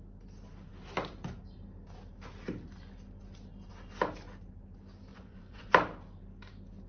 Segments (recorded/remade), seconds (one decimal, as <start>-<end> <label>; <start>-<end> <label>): 0.0-5.1 recorded; 5.1-5.7 remade; 5.7-6.9 recorded